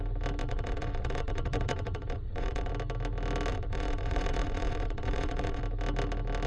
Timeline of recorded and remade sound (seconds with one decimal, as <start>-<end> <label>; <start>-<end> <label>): 0.0-0.4 recorded; 0.4-2.7 remade; 2.7-3.5 recorded; 3.5-5.6 remade; 5.6-6.5 recorded

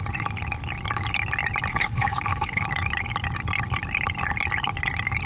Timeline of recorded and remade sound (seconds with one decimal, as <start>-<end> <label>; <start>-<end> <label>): 0.0-1.7 recorded; 1.7-2.6 remade; 2.6-5.3 recorded

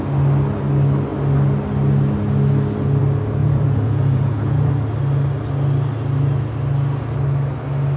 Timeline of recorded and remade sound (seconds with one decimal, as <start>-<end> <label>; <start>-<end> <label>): 0.0-3.4 recorded; 3.4-4.7 remade; 4.7-8.0 recorded